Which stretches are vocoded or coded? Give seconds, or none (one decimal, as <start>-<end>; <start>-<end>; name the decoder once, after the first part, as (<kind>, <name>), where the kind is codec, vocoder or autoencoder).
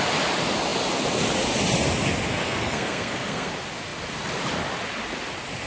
2.4-3.5 (codec, SNAC)